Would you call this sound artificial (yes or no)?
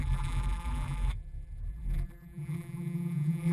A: yes